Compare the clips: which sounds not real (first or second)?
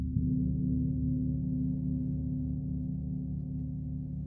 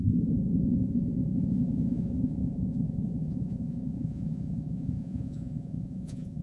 second